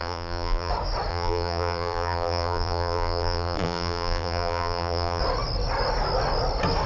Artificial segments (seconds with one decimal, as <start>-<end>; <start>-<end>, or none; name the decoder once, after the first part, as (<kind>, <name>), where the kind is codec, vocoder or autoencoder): 0.0-0.7 (vocoder, BigVGAN v2); 1.1-5.2